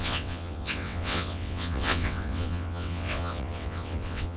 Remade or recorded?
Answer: remade